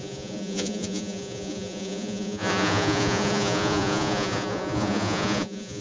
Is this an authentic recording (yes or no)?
no